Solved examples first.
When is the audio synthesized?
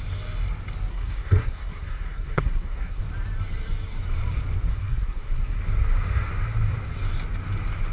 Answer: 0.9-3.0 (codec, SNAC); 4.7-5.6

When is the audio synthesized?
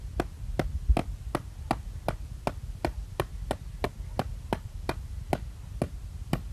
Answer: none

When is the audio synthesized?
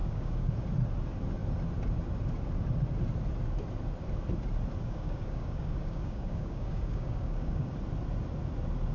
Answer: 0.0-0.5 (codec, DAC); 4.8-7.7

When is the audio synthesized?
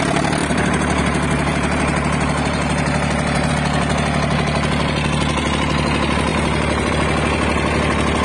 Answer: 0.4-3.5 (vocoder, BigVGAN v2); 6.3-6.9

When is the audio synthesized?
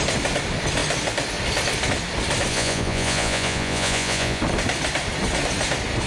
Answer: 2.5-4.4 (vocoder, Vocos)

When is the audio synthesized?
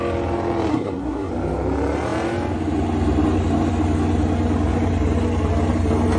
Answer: 0.7-1.3 (codec, SNAC)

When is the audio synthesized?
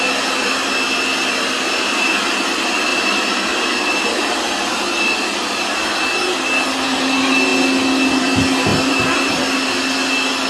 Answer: 2.9-4.2 (vocoder, BigVGAN v2); 8.7-9.4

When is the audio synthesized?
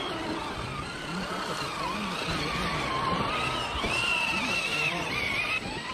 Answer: none